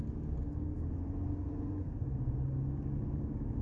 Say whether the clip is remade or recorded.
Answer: recorded